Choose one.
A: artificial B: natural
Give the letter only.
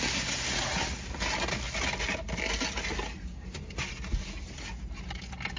B